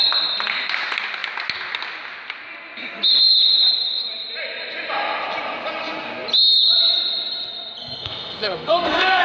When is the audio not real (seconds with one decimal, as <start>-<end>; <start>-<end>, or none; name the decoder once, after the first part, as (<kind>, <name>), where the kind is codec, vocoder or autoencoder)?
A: 7.8-9.2 (codec, SNAC)